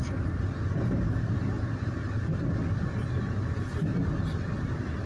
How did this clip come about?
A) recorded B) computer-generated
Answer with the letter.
A